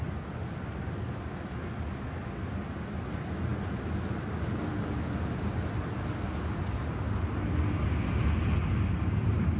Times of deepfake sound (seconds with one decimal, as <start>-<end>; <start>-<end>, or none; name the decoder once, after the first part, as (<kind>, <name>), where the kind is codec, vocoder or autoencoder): none